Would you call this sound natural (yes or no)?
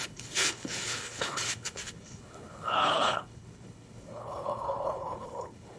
no